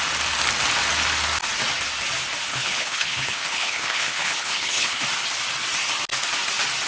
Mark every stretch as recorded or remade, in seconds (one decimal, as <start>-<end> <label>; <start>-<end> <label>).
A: 0.0-2.5 recorded; 2.5-5.0 remade; 5.0-6.9 recorded